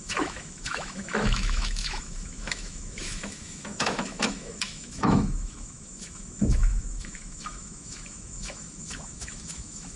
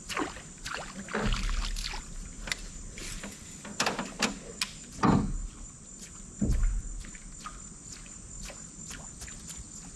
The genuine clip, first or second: second